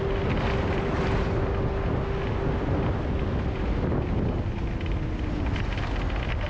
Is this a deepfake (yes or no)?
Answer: no